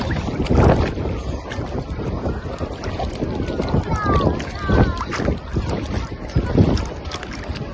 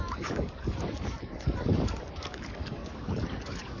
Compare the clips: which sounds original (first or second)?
first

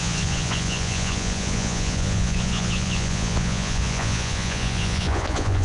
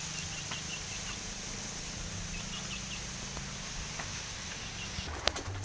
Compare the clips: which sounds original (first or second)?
second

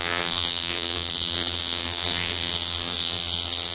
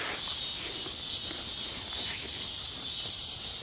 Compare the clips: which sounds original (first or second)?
second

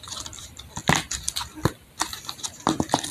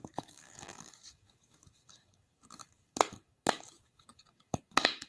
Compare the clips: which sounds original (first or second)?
first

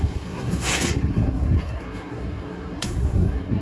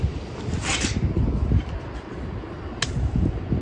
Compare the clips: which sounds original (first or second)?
second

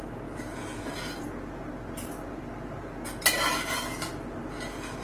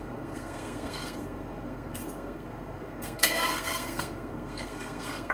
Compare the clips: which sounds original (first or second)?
first